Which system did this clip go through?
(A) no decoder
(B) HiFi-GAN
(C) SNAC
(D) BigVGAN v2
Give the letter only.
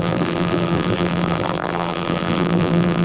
D